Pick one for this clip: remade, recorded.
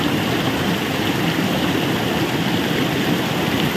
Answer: recorded